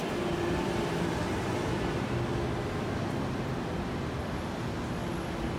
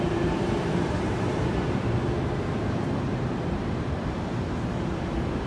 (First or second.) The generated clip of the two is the second